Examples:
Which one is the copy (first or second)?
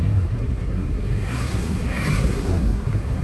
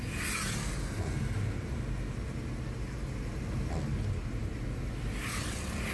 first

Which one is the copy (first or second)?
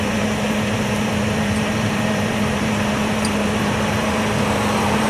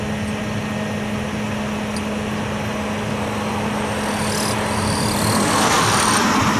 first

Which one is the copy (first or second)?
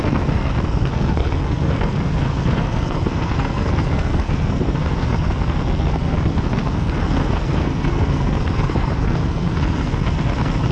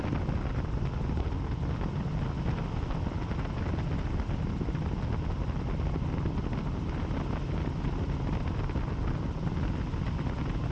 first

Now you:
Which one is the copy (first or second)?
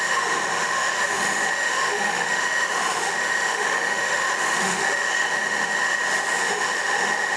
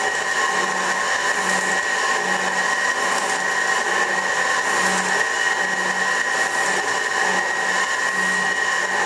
first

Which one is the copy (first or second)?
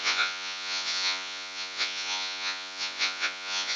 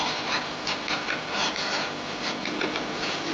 first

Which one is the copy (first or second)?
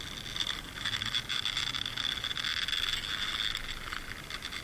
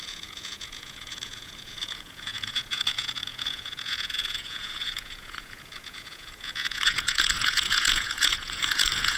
second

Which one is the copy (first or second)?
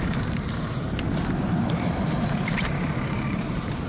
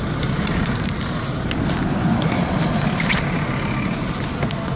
first